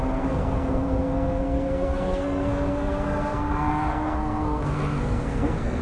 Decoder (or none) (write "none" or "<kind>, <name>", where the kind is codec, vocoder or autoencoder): codec, SNAC